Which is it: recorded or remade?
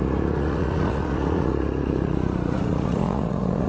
remade